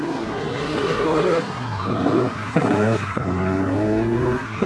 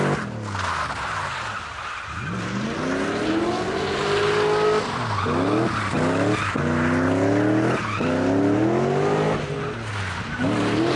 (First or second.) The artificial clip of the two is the first